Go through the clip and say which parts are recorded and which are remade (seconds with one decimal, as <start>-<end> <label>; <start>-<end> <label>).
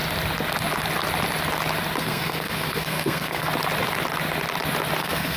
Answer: 0.0-2.0 recorded; 2.0-3.5 remade; 3.5-5.0 recorded; 5.0-5.4 remade